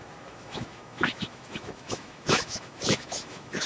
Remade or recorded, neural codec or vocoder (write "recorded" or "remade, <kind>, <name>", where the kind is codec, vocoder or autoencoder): remade, autoencoder, DAC-VAE